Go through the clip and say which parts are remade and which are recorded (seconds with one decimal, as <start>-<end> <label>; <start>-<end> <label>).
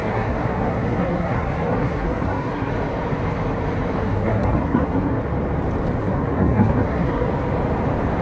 0.0-2.7 remade; 2.7-4.0 recorded; 4.0-5.2 remade; 5.2-6.0 recorded; 6.0-7.3 remade; 7.3-8.2 recorded